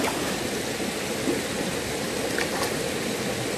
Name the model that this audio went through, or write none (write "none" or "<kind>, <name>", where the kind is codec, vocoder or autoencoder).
none